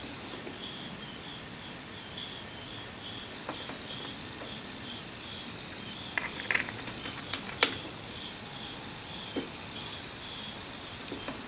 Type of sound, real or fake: real